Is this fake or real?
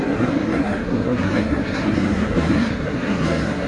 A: fake